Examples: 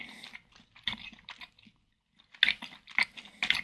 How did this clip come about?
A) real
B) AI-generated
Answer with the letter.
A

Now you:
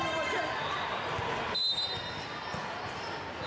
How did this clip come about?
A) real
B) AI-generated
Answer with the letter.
B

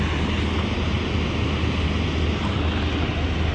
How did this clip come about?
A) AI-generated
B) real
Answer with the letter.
B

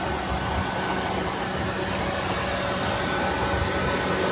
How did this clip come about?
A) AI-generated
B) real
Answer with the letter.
B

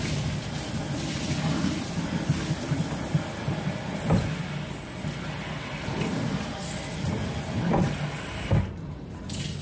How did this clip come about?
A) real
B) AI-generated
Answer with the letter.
A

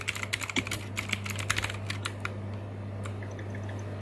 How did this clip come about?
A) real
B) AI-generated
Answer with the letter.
A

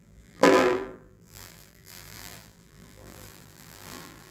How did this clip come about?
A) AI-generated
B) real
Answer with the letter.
A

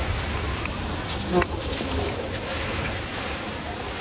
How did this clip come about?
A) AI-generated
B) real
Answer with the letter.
B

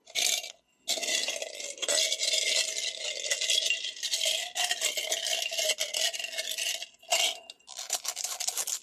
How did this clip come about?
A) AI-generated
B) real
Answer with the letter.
B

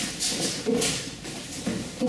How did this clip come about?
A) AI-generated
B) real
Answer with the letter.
B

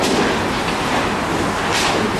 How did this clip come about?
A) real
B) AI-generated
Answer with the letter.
A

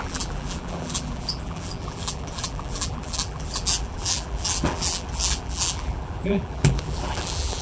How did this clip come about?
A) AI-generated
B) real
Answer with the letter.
A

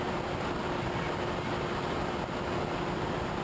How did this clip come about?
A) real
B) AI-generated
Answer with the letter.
A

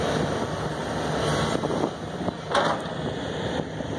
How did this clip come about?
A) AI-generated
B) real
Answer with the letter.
A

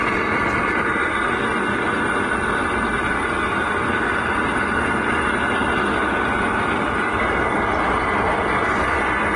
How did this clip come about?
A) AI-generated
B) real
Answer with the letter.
B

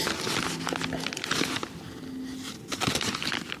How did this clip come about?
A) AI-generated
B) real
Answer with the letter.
B